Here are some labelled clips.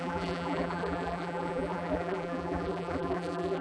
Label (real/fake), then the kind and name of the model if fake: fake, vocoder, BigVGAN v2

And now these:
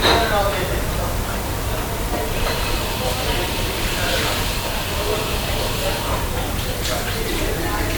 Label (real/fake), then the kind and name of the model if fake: fake, vocoder, BigVGAN v2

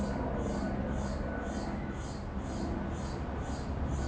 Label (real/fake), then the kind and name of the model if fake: real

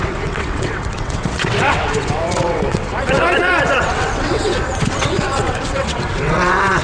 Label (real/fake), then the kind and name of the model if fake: fake, vocoder, WaveNeXt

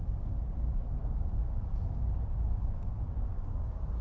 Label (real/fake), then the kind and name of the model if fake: fake, codec, DAC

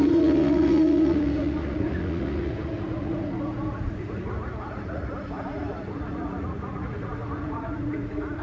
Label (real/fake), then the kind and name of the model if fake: fake, vocoder, Vocos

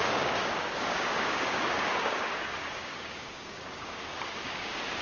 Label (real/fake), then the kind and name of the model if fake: fake, codec, DAC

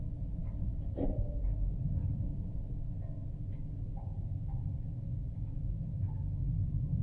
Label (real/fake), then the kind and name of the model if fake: real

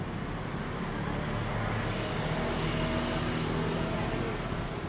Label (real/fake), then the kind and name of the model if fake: real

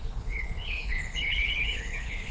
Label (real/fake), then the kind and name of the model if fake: fake, codec, HILCodec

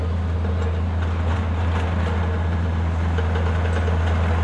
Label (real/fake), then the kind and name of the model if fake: real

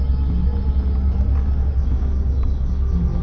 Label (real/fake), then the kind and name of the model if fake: real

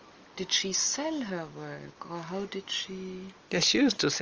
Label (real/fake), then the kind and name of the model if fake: real